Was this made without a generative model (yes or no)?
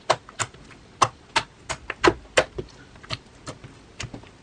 yes